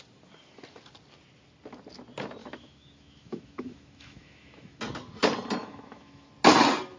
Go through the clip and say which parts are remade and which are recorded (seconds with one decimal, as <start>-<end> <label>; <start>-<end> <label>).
0.0-2.4 recorded; 2.4-4.8 remade; 4.8-5.6 recorded; 5.6-6.3 remade; 6.3-7.0 recorded